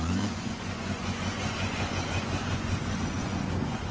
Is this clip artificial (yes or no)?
yes